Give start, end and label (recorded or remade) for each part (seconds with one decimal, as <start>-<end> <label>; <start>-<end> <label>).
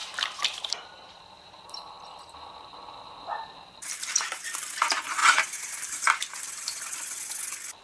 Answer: 0.0-4.7 remade; 4.7-5.2 recorded; 5.2-6.8 remade; 6.8-7.8 recorded